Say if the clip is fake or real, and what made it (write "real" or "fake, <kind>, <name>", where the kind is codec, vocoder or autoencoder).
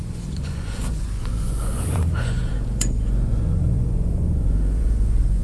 fake, vocoder, Vocos